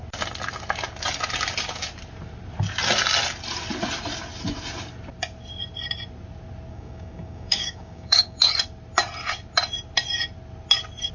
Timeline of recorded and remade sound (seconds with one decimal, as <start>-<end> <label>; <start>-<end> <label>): 0.0-6.7 recorded; 6.7-8.4 remade; 8.4-11.1 recorded